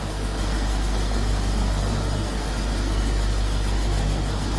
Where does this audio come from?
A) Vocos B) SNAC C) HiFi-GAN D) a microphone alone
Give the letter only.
B